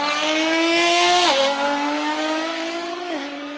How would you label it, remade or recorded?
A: remade